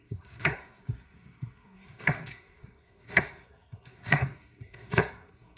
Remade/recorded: remade